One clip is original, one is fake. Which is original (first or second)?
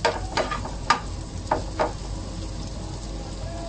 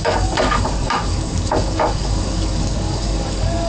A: first